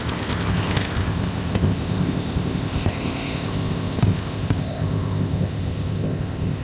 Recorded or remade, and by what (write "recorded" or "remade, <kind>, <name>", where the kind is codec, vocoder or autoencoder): remade, codec, ZipCodec